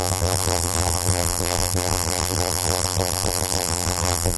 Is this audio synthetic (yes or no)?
yes